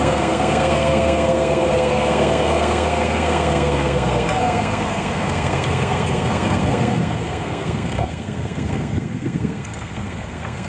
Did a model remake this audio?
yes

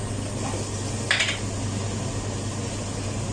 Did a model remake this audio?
no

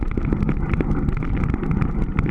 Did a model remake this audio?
no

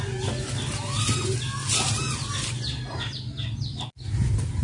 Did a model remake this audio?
no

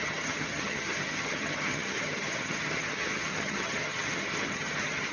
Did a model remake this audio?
yes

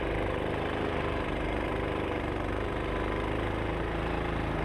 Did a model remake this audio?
yes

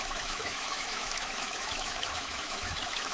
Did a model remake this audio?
yes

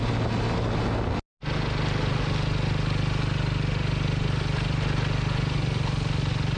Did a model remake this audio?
no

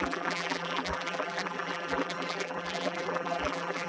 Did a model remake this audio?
yes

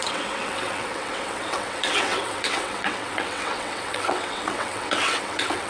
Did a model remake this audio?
yes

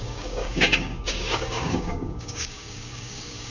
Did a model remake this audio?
yes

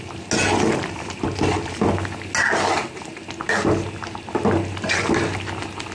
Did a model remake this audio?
no